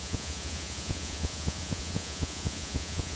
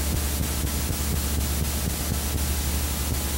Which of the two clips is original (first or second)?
second